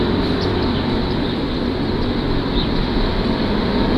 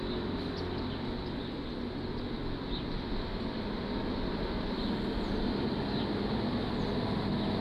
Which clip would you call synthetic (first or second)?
first